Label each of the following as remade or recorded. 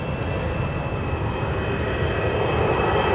recorded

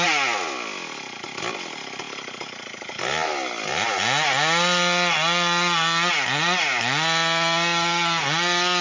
recorded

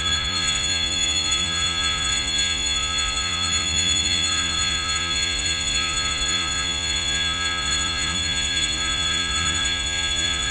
remade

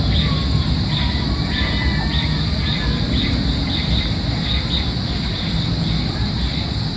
recorded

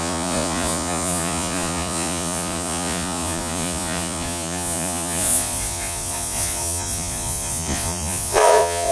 remade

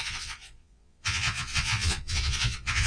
remade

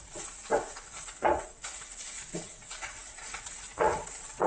remade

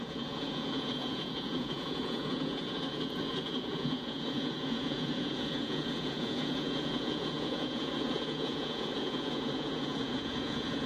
remade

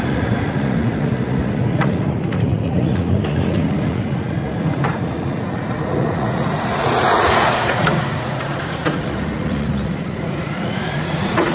remade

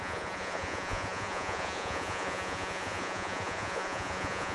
remade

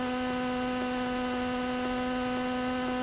recorded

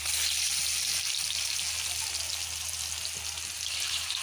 recorded